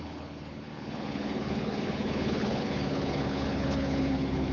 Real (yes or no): no